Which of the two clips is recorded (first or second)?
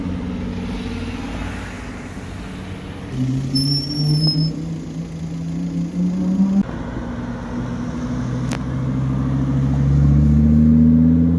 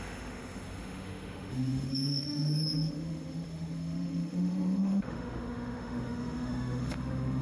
first